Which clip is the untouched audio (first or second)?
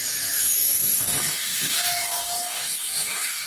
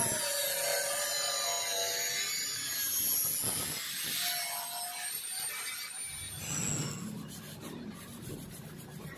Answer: second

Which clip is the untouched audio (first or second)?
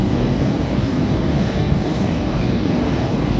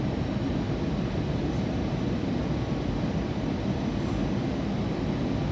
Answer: second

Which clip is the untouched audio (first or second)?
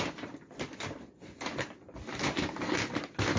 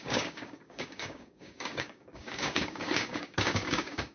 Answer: first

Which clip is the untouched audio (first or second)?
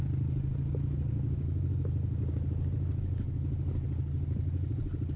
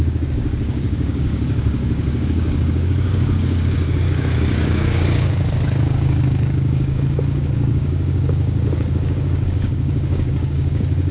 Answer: first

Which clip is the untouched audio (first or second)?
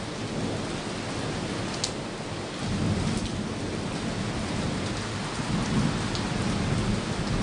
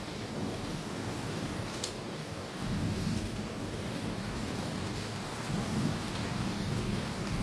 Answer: first